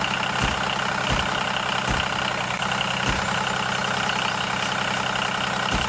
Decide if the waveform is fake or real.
real